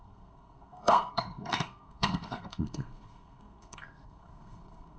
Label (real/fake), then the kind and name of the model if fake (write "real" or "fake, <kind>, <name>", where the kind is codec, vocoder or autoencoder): fake, codec, SNAC